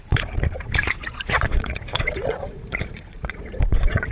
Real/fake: fake